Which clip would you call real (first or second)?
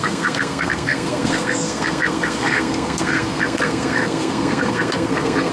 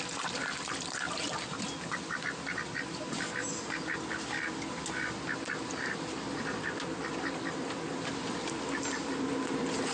second